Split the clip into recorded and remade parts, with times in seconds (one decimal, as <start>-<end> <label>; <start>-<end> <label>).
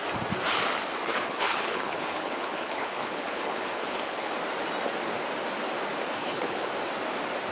0.0-1.1 recorded; 1.1-4.3 remade; 4.3-6.2 recorded; 6.2-6.7 remade; 6.7-7.5 recorded